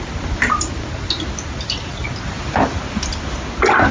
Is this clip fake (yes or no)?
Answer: no